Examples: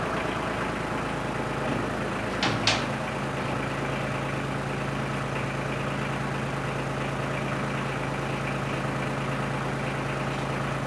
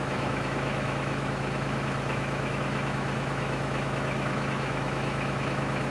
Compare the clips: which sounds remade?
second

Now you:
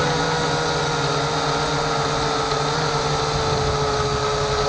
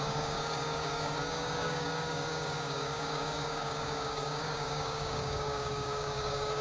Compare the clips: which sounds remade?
second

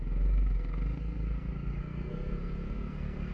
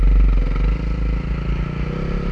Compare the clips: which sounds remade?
first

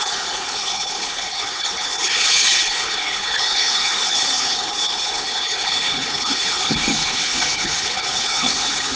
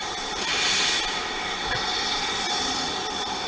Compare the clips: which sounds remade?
first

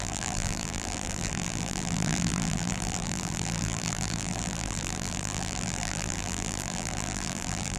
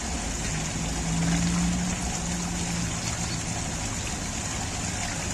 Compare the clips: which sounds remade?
first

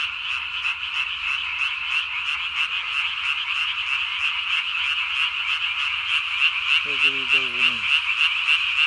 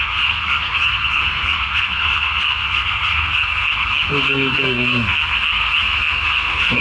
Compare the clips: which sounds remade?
second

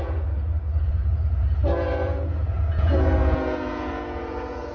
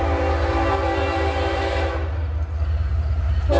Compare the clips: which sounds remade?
first